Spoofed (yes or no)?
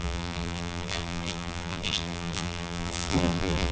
yes